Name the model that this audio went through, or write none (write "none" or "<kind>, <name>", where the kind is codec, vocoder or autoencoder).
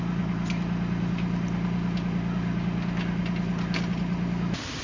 none